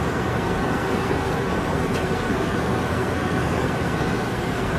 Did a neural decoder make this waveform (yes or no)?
yes